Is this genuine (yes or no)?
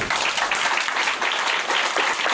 yes